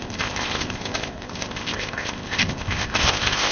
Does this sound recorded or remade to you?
remade